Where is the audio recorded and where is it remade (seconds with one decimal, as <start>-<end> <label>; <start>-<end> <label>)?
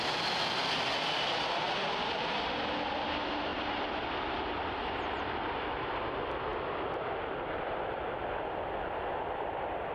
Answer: 0.0-0.6 remade; 0.6-1.3 recorded; 1.3-3.5 remade; 3.5-5.2 recorded; 5.2-6.5 remade; 6.5-7.6 recorded; 7.6-9.9 remade